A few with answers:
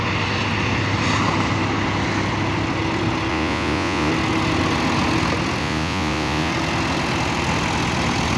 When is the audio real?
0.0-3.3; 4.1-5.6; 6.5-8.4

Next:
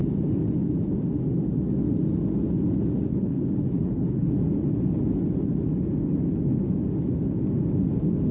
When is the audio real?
0.0-3.1; 4.3-8.3

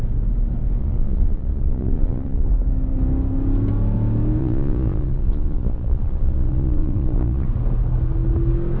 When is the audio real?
0.0-0.8; 2.5-4.4; 7.5-8.8

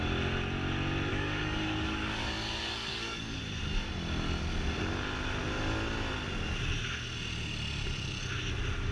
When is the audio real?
0.0-1.1; 3.4-8.9

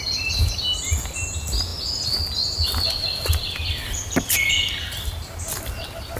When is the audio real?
0.0-6.2

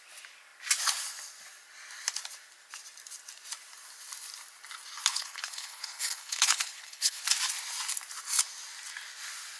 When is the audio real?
0.0-5.1; 7.2-9.6

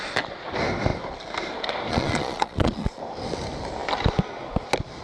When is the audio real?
0.0-1.9; 3.0-5.0